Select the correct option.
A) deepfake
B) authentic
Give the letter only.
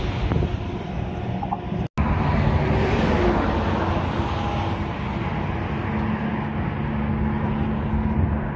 B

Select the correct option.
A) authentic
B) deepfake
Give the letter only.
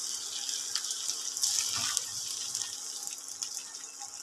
A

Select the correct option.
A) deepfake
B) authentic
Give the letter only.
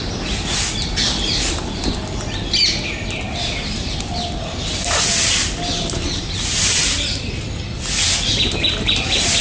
B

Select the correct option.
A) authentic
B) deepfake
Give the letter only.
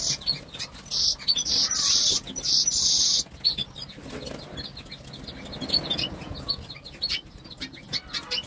A